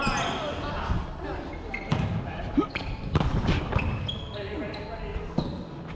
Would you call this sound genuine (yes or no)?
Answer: yes